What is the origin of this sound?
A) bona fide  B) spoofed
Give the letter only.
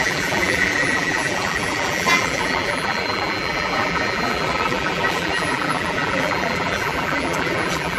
B